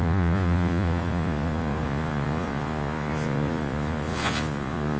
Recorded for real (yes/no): no